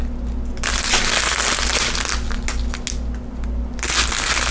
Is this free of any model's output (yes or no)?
yes